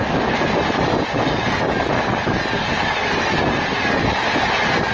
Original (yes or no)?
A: yes